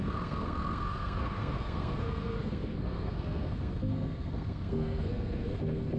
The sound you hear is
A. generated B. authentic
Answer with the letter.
A